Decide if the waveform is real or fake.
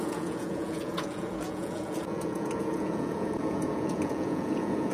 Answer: fake